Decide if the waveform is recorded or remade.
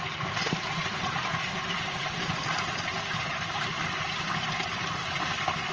remade